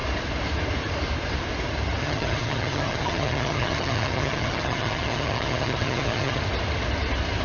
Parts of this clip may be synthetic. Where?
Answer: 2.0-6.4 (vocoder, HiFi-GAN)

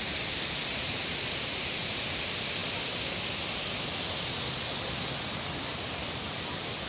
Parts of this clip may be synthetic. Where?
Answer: 0.0-2.6 (vocoder, BigVGAN v2); 4.7-6.9